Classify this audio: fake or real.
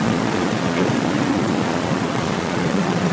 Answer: fake